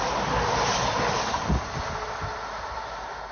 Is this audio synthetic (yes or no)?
no